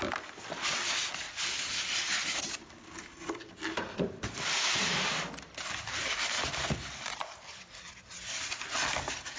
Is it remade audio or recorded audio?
remade